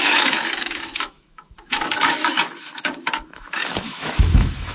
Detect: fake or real fake